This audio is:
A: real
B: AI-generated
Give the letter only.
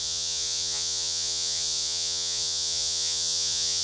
B